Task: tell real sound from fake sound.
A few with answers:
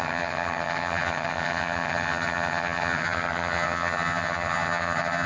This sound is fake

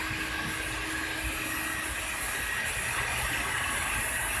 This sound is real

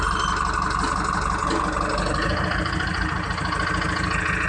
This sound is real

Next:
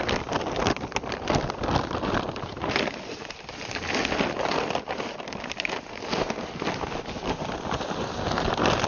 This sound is real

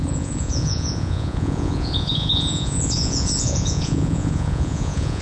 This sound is fake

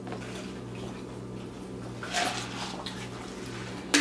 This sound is real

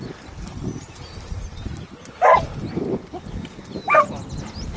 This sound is real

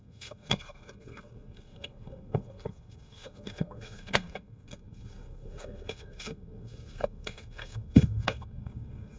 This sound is fake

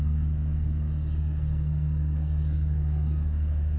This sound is fake